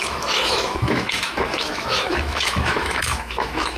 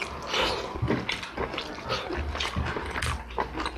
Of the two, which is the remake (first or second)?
first